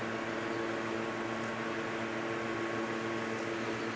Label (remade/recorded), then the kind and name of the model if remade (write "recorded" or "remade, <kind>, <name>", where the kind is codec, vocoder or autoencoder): recorded